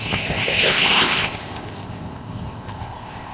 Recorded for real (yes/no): no